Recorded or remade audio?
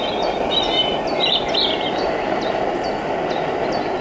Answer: recorded